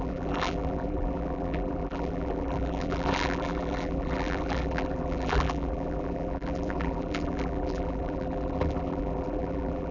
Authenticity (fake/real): fake